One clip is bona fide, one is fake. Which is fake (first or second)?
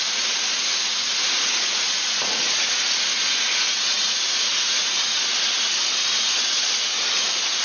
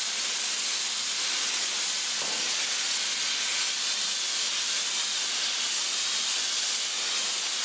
first